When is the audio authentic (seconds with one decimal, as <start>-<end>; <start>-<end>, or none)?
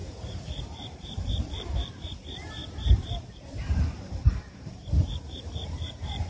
none